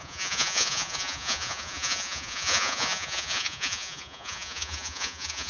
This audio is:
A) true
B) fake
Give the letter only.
B